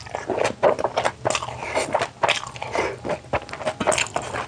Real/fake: real